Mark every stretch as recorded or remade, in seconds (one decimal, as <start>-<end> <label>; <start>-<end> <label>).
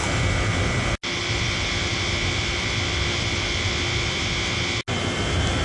0.0-5.6 recorded